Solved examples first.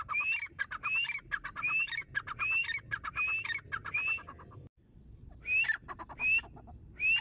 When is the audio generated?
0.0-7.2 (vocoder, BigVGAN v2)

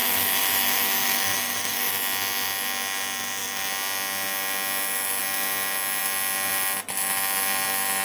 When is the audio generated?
0.0-1.9 (autoencoder, DAC-VAE)

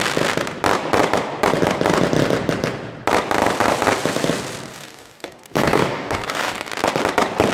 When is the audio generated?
4.7-6.7 (codec, DAC)

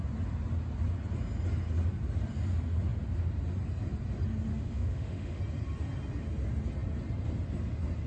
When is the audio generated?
4.5-5.4 (autoencoder, DAC-VAE)